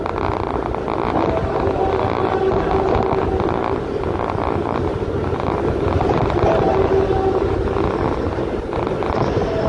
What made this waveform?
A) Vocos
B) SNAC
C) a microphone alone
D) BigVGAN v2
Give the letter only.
C